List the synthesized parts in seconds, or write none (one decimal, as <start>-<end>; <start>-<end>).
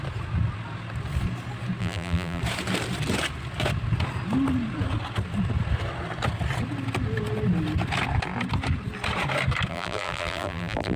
1.8-2.4; 9.7-11.0